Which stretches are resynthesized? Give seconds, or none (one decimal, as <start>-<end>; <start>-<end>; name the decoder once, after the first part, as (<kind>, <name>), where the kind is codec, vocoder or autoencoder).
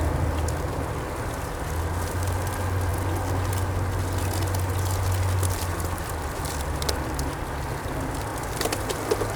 none